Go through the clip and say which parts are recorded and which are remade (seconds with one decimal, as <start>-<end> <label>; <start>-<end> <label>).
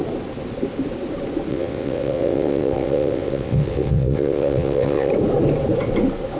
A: 0.0-1.5 recorded; 1.5-5.1 remade; 5.1-6.4 recorded